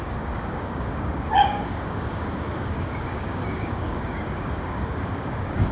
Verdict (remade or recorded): remade